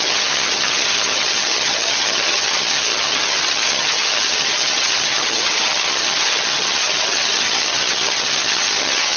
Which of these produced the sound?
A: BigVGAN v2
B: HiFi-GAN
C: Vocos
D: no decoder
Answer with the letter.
B